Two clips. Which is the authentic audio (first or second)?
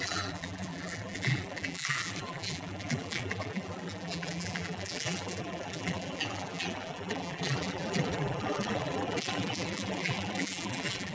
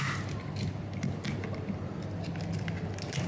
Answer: second